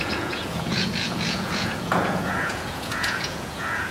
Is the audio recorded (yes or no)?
no